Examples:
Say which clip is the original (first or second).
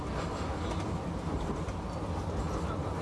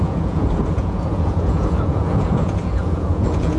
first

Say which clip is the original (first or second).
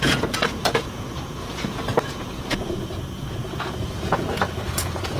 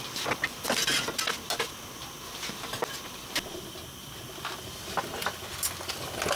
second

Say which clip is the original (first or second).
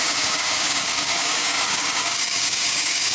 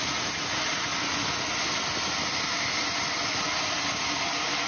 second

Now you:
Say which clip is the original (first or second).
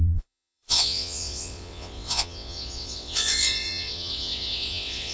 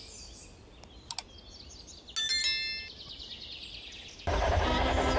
second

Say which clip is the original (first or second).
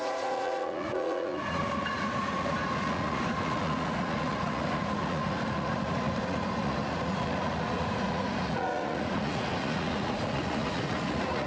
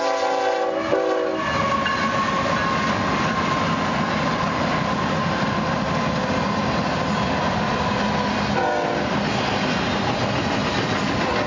second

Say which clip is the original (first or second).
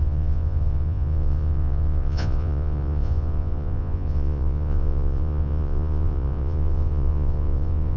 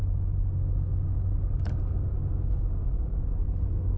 second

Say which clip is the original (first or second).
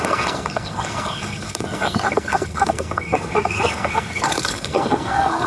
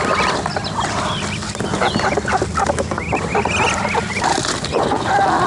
second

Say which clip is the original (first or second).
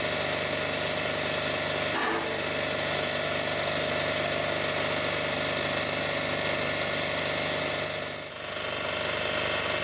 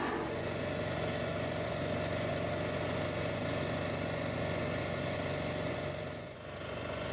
first